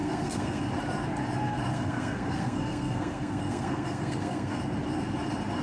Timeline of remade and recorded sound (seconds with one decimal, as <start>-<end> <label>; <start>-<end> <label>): 0.0-0.6 remade; 0.6-1.7 recorded; 1.7-4.6 remade; 4.6-5.6 recorded